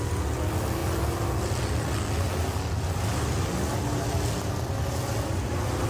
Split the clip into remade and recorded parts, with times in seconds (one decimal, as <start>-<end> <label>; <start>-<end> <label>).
0.0-5.9 recorded